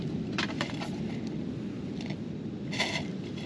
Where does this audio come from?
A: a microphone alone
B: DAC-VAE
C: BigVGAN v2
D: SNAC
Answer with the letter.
A